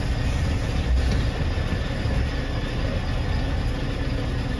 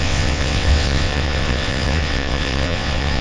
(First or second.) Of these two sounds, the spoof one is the second